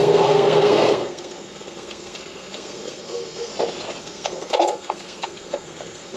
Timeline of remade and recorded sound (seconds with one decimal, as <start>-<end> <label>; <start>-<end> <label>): 0.0-3.5 remade; 3.5-4.0 recorded; 4.0-6.2 remade